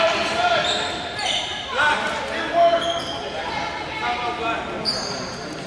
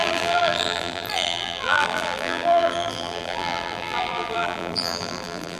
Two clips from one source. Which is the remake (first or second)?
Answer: second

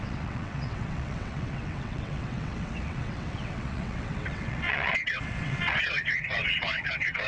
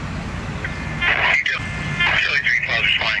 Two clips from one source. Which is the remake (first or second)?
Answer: first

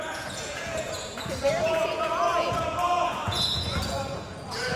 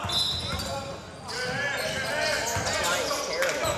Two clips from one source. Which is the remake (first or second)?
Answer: first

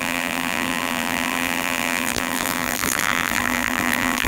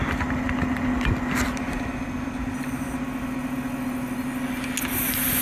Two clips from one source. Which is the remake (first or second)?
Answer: first